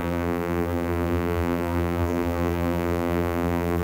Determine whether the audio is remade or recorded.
remade